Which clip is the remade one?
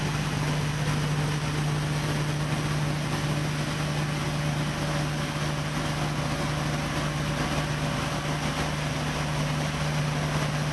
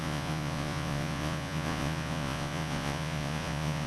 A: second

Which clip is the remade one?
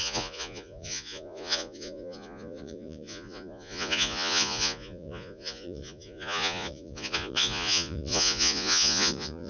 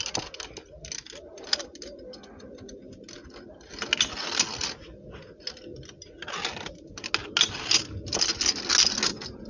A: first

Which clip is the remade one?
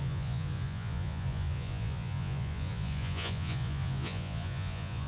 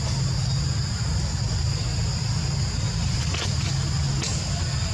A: first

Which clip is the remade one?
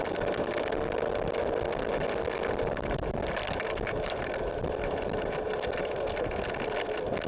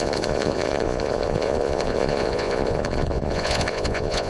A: second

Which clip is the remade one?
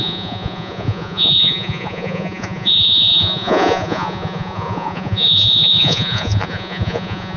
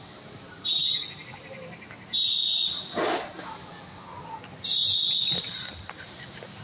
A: first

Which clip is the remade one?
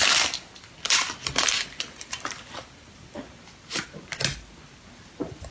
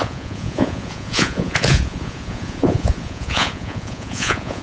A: second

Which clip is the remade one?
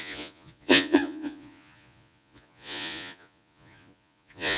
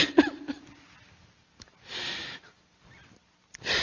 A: first